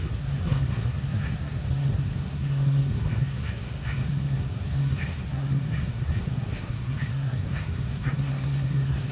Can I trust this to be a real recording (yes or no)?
no